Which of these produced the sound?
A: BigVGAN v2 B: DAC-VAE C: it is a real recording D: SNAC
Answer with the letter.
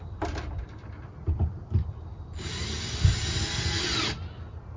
C